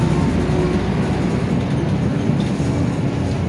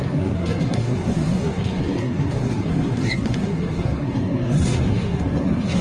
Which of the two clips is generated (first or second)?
second